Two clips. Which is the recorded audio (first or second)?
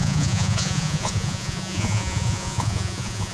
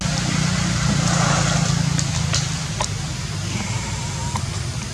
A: second